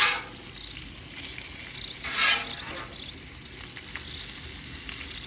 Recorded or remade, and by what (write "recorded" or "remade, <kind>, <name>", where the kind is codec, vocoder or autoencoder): recorded